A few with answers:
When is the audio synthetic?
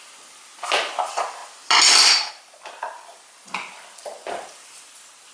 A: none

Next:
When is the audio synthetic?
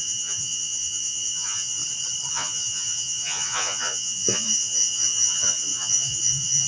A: 0.0-1.8 (vocoder, Vocos); 2.3-6.7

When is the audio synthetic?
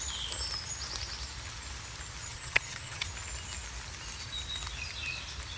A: 2.2-3.1 (vocoder, HiFi-GAN)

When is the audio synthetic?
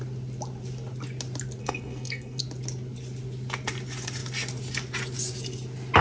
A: 1.6-2.4 (codec, SNAC)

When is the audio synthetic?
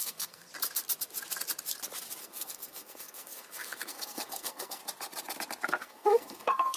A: 0.0-0.5 (codec, SNAC); 2.2-4.8; 5.8-6.8